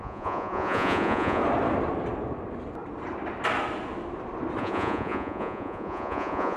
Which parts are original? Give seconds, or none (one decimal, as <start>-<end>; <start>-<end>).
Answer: 1.4-4.6